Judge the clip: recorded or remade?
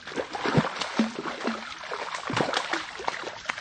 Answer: recorded